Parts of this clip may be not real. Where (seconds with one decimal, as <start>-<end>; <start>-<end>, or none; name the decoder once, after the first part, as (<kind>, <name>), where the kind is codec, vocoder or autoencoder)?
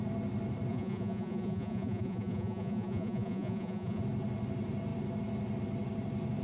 0.7-4.0 (vocoder, Vocos)